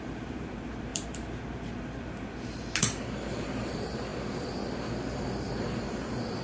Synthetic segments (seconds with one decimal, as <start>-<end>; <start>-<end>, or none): 0.0-4.1; 5.2-6.4